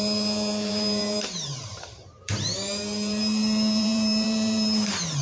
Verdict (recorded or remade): remade